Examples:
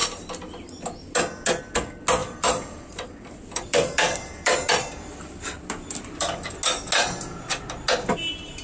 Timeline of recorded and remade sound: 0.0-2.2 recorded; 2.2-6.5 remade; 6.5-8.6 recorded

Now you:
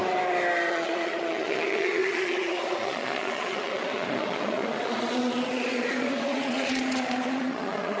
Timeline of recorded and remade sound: 0.0-0.7 recorded; 0.7-8.0 remade